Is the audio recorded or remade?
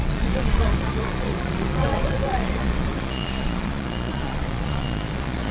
remade